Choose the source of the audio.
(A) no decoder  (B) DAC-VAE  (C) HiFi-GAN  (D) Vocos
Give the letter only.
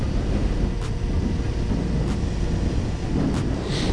A